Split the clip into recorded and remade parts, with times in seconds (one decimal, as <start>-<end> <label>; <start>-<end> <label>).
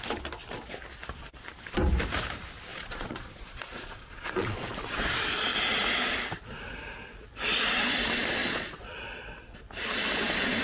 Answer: 0.0-2.7 recorded; 2.7-4.7 remade; 4.7-8.4 recorded; 8.4-9.0 remade; 9.0-10.6 recorded